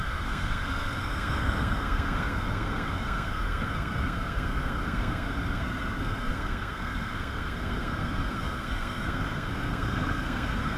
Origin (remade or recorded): remade